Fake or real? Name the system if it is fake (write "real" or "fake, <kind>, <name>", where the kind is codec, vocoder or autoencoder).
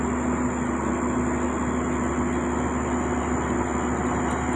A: real